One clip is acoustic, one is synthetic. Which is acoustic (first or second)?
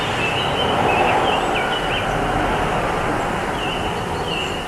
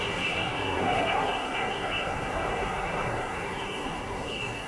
first